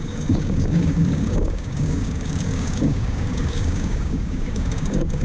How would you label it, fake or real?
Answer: fake